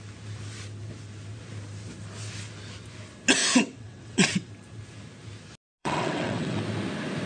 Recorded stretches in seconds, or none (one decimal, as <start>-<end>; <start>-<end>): 0.0-3.4; 4.5-5.8; 6.6-7.3